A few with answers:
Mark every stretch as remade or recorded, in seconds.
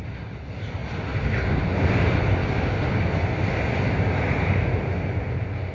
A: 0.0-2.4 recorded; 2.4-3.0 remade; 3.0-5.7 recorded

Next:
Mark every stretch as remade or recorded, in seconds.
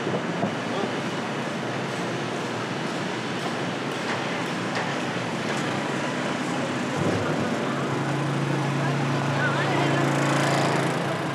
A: 0.0-4.9 recorded; 4.9-6.6 remade; 6.6-11.3 recorded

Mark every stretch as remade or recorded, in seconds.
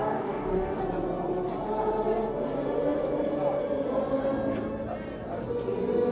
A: 0.0-0.8 remade; 0.8-6.1 recorded